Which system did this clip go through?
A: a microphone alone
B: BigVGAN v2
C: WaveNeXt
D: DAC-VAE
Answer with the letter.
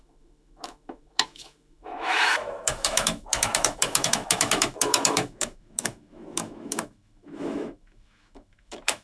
D